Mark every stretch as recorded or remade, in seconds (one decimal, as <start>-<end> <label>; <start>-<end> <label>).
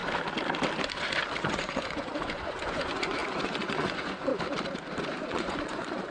0.0-1.4 recorded; 1.4-4.3 remade; 4.3-5.2 recorded; 5.2-6.1 remade